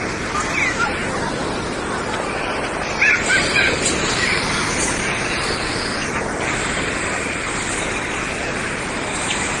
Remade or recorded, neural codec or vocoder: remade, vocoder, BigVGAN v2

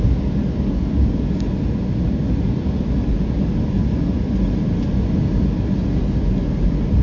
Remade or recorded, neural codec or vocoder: recorded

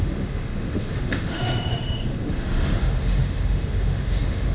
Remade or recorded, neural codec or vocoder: remade, autoencoder, DAC-VAE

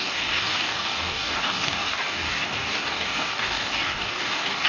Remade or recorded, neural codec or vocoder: remade, codec, DAC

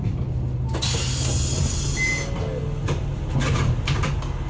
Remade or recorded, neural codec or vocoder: recorded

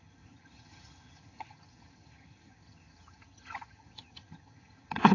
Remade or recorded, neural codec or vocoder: remade, vocoder, HiFi-GAN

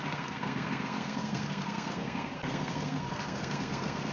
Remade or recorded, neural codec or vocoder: remade, codec, SNAC